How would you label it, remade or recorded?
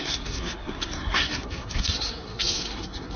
remade